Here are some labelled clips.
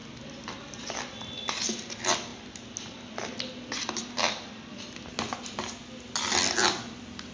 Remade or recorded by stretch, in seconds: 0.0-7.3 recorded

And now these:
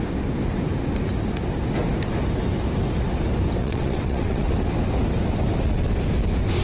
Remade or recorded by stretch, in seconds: 0.0-3.6 recorded; 3.6-4.5 remade; 4.5-6.6 recorded

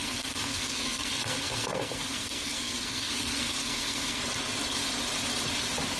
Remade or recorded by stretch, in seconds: 0.0-4.2 remade; 4.2-6.0 recorded

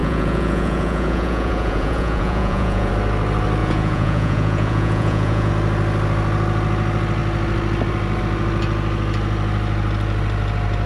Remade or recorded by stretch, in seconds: 0.0-2.9 remade; 2.9-3.6 recorded; 3.6-5.5 remade; 5.5-10.9 recorded

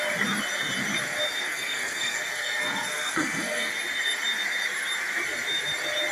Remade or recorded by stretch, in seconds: 0.0-1.4 recorded; 1.4-3.7 remade; 3.7-6.1 recorded

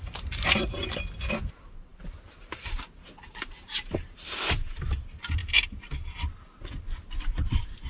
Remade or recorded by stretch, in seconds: 0.0-5.4 remade; 5.4-7.2 recorded; 7.2-7.9 remade

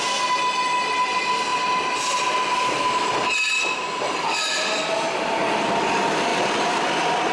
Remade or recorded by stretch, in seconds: 0.0-7.3 recorded

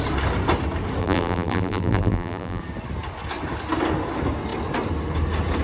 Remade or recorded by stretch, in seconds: 0.0-1.0 recorded; 1.0-2.6 remade; 2.6-5.6 recorded